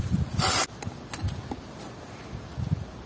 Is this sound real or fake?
real